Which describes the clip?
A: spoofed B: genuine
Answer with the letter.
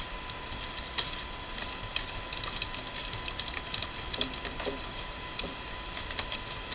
B